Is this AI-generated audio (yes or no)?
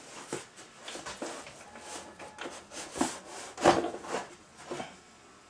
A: no